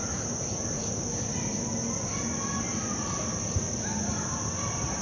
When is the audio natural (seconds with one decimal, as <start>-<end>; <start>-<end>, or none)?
0.0-0.5; 1.7-5.0